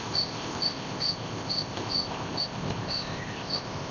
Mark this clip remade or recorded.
remade